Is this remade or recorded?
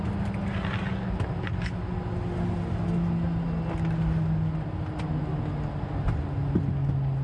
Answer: recorded